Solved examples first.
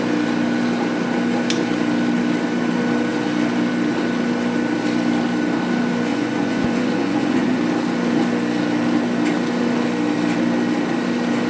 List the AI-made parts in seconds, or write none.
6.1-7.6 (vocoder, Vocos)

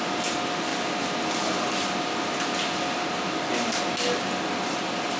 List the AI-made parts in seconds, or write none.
none

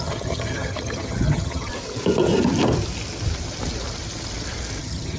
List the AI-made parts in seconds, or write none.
0.0-1.7 (vocoder, HiFi-GAN); 4.8-5.2

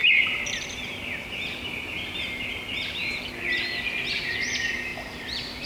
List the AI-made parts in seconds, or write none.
0.0-1.4 (vocoder, BigVGAN v2)